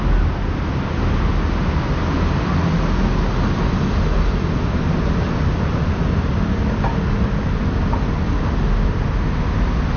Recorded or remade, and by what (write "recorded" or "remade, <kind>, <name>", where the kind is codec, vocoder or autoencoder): recorded